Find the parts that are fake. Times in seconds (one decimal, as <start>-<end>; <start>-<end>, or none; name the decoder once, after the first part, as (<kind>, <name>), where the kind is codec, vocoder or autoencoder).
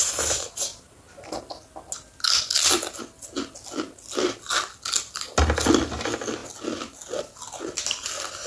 none